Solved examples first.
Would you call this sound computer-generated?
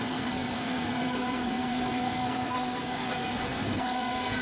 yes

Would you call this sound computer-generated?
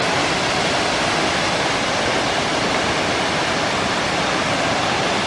no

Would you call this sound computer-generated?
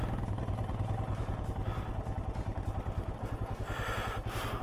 no